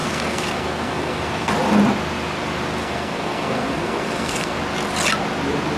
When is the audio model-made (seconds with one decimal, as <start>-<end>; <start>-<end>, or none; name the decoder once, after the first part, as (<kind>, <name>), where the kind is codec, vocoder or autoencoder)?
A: 0.0-1.5 (codec, SNAC); 2.8-4.6